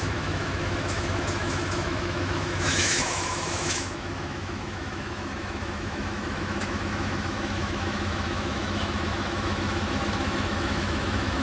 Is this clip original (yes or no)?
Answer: no